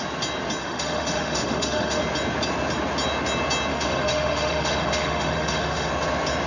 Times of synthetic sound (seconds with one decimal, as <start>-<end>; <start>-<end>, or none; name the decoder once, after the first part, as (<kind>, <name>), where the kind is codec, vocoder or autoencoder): 0.6-2.0 (autoencoder, DAC-VAE); 3.7-5.9